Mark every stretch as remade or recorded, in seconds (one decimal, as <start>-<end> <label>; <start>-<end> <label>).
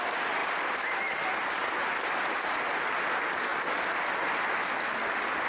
0.0-5.5 recorded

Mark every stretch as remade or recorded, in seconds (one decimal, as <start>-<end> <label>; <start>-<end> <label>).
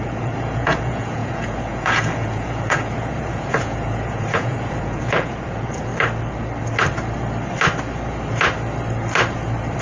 0.0-5.9 remade; 5.9-9.8 recorded